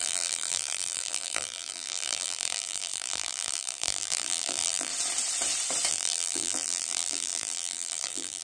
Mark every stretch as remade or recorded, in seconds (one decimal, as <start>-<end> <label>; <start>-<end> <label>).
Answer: 0.0-4.9 remade; 4.9-5.9 recorded; 5.9-8.4 remade